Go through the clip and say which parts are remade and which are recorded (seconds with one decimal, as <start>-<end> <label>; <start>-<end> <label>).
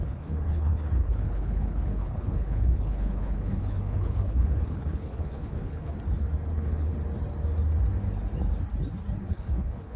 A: 0.0-5.9 remade; 5.9-6.5 recorded; 6.5-6.9 remade; 6.9-9.3 recorded; 9.3-10.0 remade